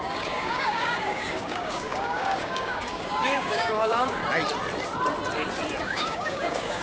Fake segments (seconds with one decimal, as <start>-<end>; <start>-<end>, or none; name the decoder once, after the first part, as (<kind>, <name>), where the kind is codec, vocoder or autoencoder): 0.0-4.2 (codec, DAC); 5.8-6.8